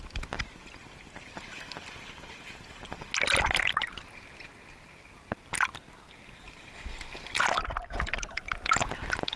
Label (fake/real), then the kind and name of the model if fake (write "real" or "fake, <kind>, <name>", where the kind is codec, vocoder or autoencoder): real